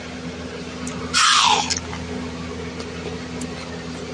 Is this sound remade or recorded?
recorded